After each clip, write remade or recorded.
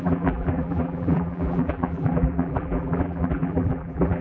remade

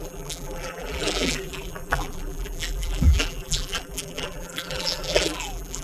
remade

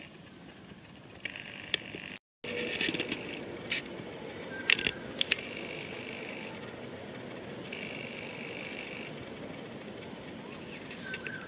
recorded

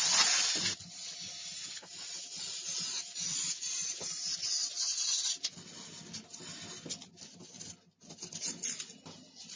recorded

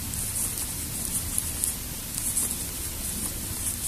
recorded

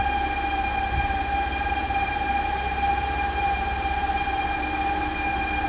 recorded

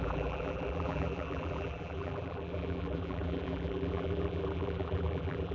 remade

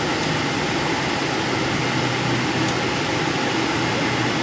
recorded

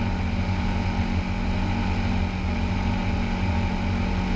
recorded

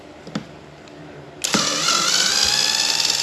recorded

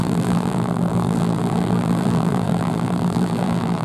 remade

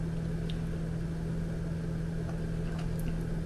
recorded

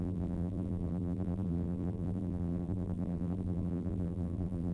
remade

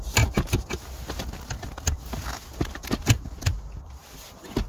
remade